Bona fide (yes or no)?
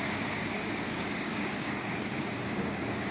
no